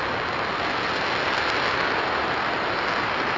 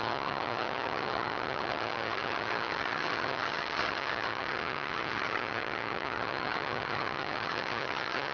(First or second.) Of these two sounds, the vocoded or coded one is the second